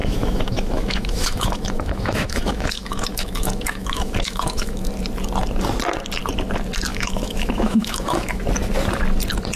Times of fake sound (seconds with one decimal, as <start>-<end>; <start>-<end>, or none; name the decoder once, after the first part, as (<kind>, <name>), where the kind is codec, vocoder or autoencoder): 0.0-4.9 (autoencoder, DAC-VAE); 6.9-8.4